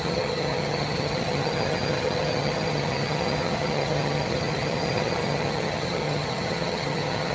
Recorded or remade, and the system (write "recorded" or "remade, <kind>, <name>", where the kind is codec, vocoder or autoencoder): remade, vocoder, HiFi-GAN